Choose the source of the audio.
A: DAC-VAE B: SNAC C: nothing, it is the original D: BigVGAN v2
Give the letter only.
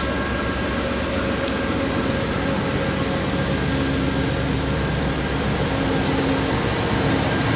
C